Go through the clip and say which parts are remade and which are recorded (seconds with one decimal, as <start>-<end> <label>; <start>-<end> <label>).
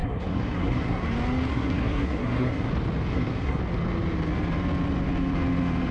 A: 0.0-1.0 remade; 1.0-1.5 recorded; 1.5-2.7 remade; 2.7-3.1 recorded; 3.1-3.6 remade; 3.6-5.9 recorded